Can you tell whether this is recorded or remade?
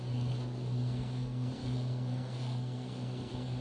remade